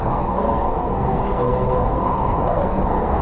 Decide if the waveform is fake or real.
fake